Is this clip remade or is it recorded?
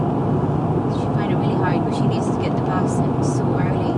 recorded